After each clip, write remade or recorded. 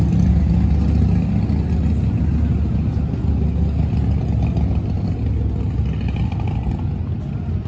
recorded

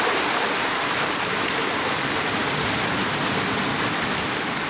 recorded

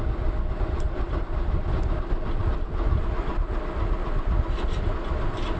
recorded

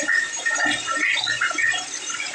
recorded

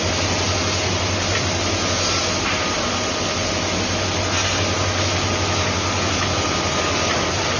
recorded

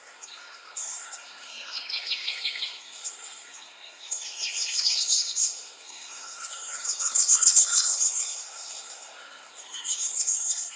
remade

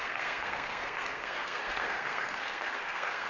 remade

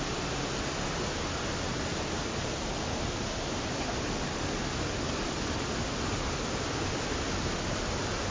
recorded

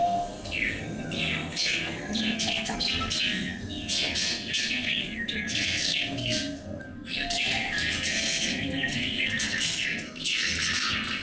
remade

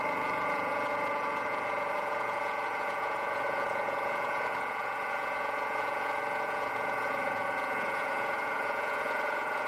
remade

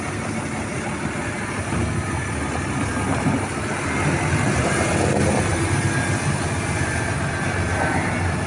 recorded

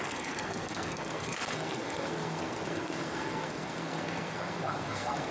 remade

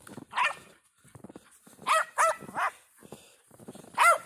recorded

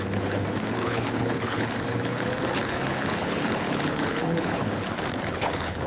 remade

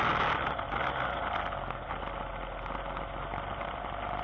recorded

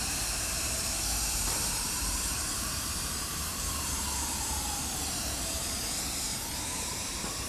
remade